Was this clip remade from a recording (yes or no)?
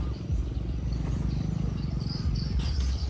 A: yes